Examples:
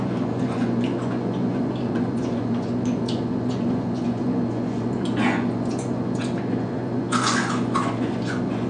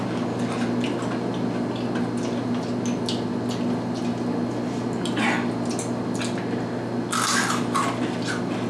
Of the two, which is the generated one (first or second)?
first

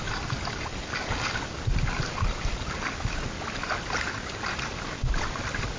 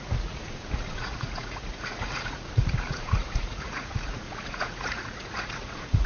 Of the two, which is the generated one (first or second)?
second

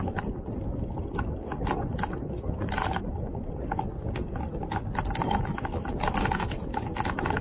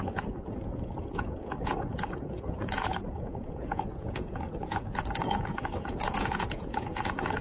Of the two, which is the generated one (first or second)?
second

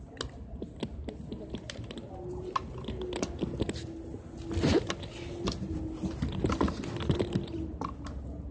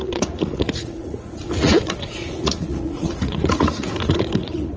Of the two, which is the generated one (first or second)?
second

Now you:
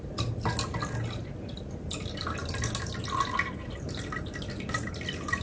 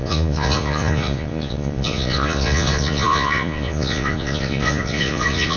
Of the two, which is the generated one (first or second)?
second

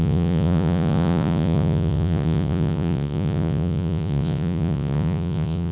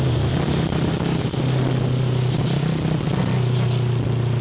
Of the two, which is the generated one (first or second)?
first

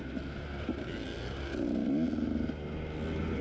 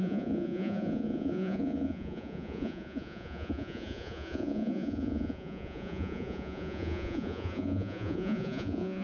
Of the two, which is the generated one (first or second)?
second